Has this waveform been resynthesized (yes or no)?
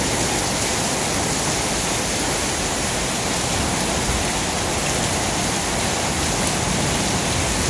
no